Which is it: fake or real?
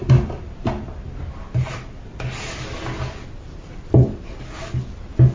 real